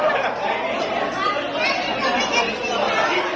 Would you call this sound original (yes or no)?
yes